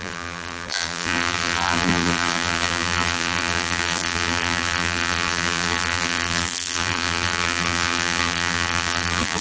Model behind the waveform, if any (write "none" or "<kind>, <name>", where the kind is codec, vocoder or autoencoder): vocoder, BigVGAN v2